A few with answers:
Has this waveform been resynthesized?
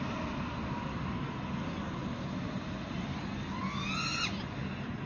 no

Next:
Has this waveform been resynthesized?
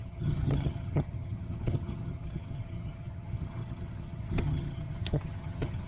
yes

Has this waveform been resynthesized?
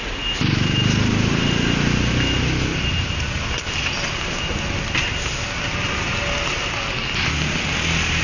no